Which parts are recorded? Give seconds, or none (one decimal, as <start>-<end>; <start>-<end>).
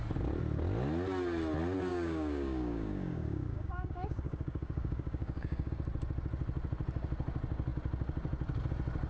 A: 0.0-1.9; 5.7-9.1